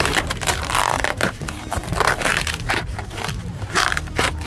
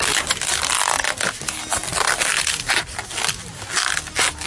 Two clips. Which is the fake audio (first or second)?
first